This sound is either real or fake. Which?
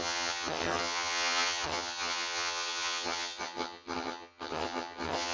fake